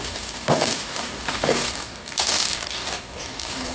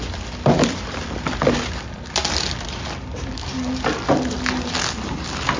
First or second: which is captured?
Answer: second